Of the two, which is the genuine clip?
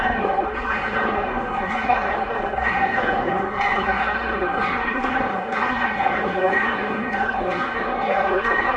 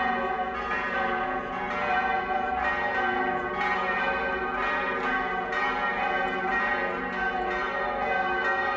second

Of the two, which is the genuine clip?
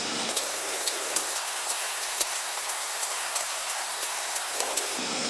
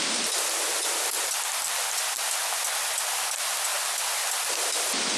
second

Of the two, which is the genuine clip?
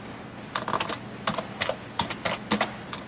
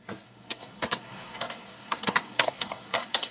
first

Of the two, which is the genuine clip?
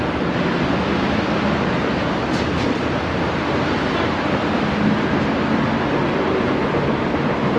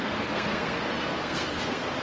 first